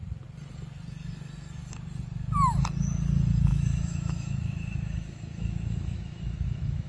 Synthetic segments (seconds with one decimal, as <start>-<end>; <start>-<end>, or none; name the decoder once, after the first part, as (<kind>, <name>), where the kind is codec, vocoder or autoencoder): 3.5-6.9 (autoencoder, DAC-VAE)